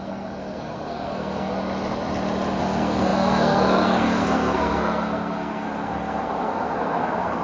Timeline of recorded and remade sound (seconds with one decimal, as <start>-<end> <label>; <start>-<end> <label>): 0.0-1.5 remade; 1.5-2.6 recorded; 2.6-7.4 remade